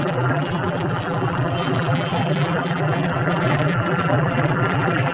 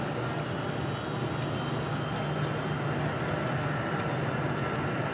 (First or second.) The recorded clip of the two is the second